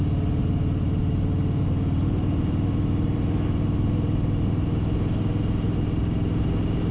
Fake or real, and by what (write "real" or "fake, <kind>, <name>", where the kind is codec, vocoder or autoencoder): real